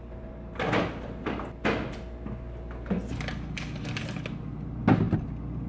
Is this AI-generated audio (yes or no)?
no